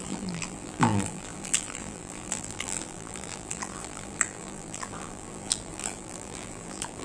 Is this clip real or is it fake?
fake